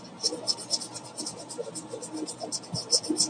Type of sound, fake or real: real